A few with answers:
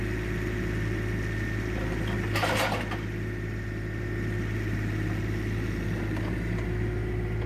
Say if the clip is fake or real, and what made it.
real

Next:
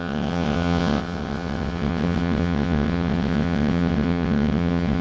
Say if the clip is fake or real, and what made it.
fake, vocoder, WaveNeXt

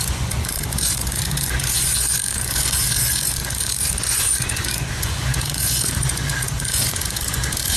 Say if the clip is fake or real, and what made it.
fake, vocoder, Vocos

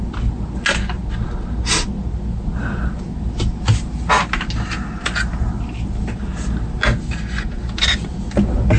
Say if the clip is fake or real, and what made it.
real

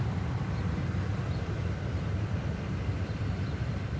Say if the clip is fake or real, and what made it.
fake, vocoder, BigVGAN v2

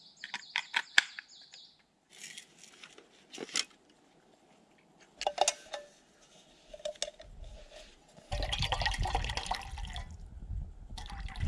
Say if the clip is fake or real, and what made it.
real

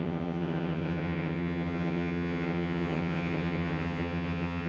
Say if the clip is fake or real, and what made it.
fake, vocoder, HiFi-GAN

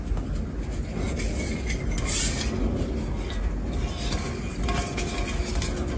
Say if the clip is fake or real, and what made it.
real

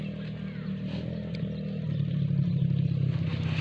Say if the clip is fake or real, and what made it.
real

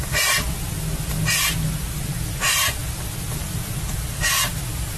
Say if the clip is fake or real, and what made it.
real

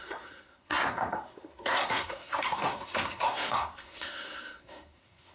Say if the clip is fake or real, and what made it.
fake, codec, SNAC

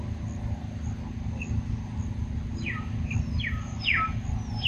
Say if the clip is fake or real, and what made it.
real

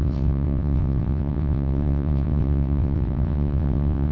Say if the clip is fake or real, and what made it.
fake, vocoder, WaveNeXt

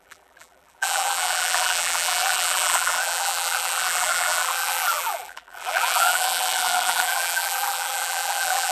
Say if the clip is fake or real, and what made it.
fake, vocoder, BigVGAN v2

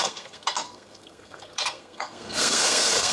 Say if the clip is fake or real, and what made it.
fake, codec, SNAC